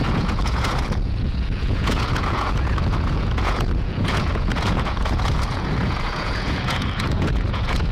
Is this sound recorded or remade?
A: remade